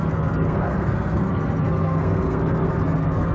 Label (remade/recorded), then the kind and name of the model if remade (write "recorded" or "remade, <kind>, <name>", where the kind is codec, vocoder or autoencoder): remade, codec, SNAC